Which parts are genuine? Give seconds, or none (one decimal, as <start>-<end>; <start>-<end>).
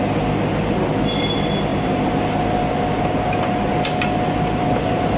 0.0-5.2